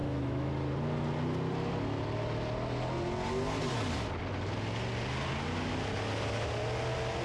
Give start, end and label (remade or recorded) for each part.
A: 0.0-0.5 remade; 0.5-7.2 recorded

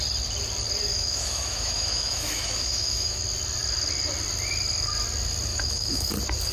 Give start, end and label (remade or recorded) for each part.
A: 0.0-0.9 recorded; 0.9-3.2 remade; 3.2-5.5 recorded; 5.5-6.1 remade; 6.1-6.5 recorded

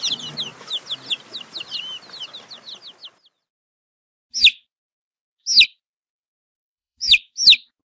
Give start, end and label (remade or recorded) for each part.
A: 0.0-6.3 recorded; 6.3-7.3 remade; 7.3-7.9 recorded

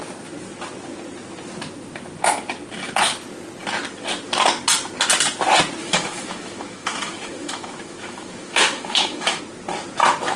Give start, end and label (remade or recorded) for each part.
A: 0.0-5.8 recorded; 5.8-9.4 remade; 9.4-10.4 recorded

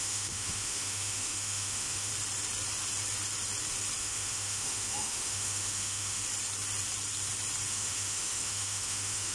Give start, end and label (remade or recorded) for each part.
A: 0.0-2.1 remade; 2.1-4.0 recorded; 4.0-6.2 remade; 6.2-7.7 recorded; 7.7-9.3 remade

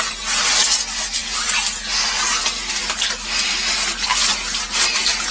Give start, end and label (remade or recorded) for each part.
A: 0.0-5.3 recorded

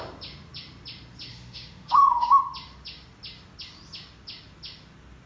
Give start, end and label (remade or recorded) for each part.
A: 0.0-1.3 recorded; 1.3-2.4 remade; 2.4-5.3 recorded